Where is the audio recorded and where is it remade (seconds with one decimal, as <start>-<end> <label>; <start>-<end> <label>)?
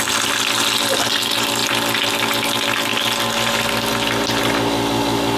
0.0-5.4 recorded